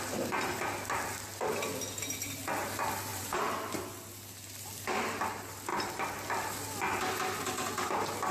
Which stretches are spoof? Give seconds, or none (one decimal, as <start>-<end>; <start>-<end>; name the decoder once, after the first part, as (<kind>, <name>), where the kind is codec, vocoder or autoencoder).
3.1-3.6 (vocoder, BigVGAN v2)